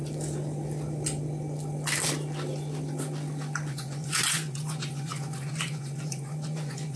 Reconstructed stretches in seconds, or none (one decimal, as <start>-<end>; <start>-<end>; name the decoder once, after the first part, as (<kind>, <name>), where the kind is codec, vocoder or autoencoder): 3.7-7.0 (vocoder, Vocos)